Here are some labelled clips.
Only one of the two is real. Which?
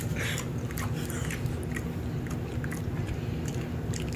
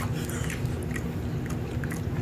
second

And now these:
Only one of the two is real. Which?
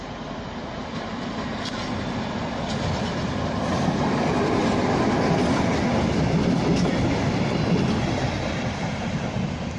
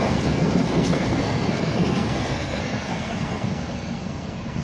first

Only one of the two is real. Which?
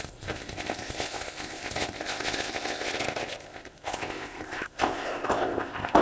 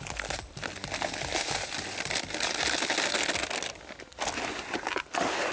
second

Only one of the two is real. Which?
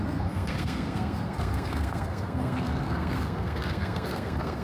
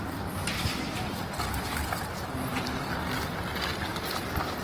second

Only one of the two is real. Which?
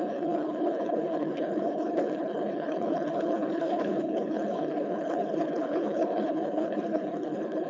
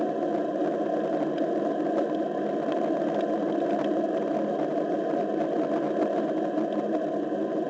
second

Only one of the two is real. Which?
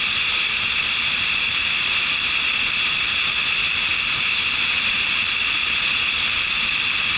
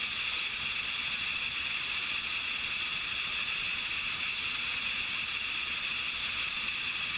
first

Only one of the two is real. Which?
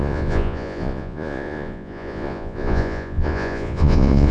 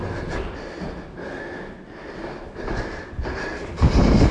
second